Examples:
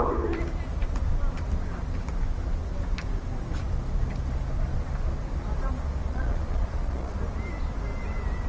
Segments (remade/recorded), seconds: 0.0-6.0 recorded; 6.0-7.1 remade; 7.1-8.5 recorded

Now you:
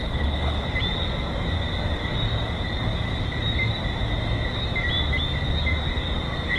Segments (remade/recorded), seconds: 0.0-0.7 remade; 0.7-6.6 recorded

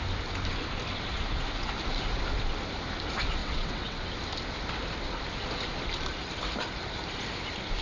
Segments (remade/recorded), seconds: 0.0-3.4 recorded; 3.4-4.0 remade; 4.0-7.8 recorded